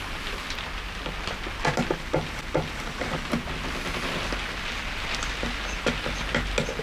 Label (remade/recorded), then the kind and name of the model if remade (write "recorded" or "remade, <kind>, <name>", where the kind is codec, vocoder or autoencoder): recorded